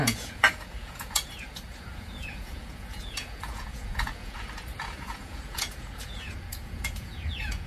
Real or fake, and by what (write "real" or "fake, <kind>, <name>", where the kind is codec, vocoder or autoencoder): fake, vocoder, Vocos